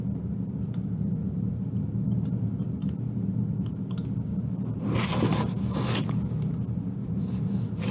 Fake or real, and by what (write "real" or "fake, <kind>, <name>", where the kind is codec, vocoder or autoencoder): fake, vocoder, BigVGAN v2